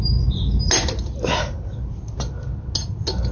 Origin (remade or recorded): recorded